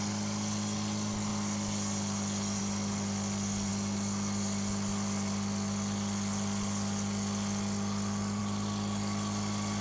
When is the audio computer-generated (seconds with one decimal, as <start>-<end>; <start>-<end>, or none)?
none